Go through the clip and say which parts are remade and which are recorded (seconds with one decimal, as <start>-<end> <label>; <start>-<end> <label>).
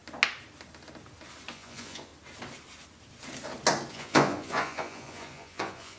0.0-1.5 recorded; 1.5-2.1 remade; 2.1-3.9 recorded; 3.9-6.0 remade